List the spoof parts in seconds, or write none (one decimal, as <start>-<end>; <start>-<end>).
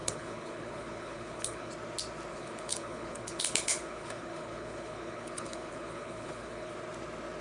0.0-1.7; 2.3-6.7